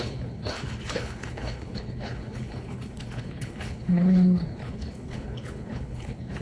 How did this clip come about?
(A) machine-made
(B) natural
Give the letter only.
A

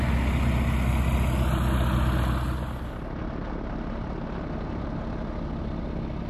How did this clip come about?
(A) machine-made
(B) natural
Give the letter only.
B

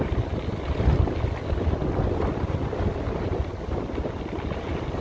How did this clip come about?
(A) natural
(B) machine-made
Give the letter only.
A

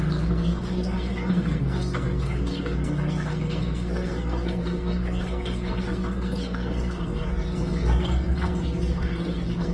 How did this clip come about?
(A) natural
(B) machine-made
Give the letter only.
B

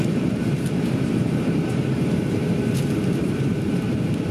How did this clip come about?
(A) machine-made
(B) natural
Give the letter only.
A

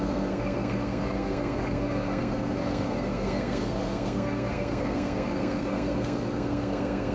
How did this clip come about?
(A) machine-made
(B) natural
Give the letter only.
A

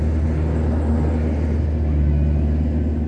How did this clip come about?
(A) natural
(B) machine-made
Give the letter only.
A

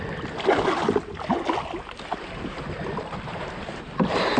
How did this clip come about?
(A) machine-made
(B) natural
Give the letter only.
B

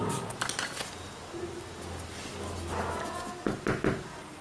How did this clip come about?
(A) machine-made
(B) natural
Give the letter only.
B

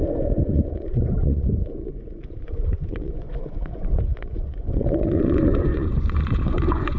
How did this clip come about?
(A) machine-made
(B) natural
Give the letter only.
A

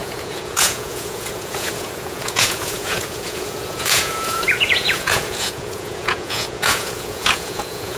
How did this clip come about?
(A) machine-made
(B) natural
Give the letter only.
A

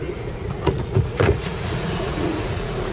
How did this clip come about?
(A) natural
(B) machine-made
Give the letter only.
B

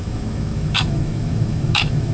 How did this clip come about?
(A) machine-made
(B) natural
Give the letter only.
A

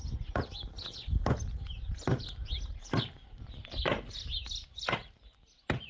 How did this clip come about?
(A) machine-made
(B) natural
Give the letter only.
B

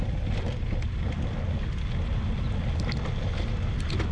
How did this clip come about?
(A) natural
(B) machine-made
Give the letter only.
A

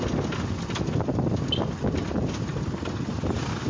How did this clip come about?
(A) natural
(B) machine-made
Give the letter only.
A